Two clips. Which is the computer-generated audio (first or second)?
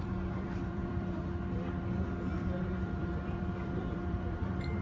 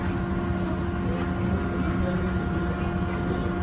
first